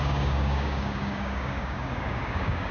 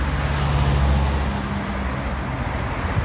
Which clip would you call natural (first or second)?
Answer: second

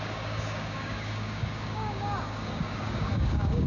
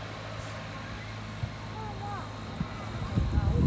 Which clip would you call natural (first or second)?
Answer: second